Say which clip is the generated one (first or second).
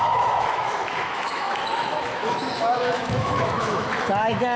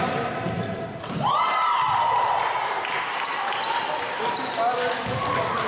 first